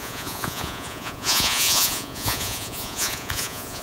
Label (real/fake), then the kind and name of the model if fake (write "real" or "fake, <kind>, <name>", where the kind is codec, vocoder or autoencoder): fake, vocoder, Vocos